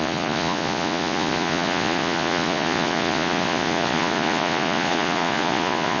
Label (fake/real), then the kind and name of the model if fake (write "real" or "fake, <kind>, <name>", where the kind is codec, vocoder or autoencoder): fake, vocoder, Vocos